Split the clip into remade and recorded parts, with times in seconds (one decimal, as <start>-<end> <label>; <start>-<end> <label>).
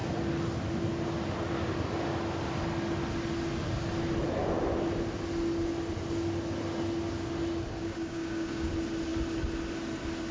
0.0-7.8 recorded; 7.8-8.7 remade; 8.7-10.3 recorded